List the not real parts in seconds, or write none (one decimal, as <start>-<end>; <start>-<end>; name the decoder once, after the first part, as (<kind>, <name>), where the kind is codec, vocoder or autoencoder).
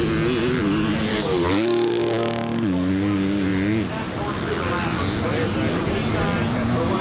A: 1.1-2.9 (codec, DAC)